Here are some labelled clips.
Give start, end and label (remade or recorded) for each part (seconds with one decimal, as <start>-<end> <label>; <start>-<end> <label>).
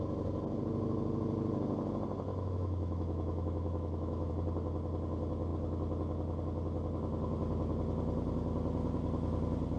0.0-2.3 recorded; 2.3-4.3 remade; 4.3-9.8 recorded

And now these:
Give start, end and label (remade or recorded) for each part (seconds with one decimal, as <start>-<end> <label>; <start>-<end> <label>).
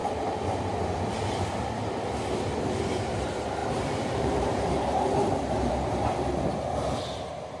0.0-3.6 recorded; 3.6-5.7 remade; 5.7-7.6 recorded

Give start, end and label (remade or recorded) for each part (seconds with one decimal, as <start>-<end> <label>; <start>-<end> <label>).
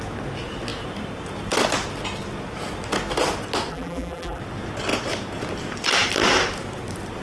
0.0-3.7 recorded; 3.7-4.4 remade; 4.4-7.2 recorded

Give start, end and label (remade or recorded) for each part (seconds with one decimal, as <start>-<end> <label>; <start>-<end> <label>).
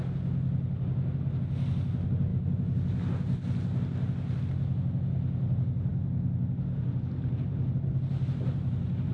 0.0-9.1 recorded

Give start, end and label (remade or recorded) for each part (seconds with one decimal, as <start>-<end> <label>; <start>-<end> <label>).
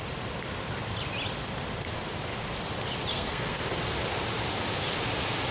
0.0-3.1 recorded; 3.1-3.6 remade; 3.6-5.5 recorded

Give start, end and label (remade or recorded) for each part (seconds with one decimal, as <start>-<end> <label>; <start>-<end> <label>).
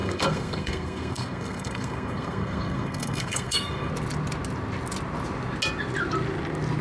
0.0-3.9 remade; 3.9-6.8 recorded